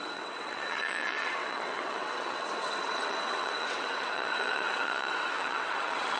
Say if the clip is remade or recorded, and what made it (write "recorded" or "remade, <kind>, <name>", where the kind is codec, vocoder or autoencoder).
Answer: remade, vocoder, WaveNeXt